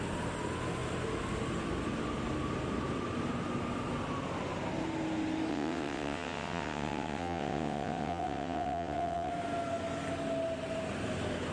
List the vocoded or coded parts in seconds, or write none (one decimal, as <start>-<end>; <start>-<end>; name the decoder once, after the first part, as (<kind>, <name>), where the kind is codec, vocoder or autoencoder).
5.5-9.3 (vocoder, WaveNeXt)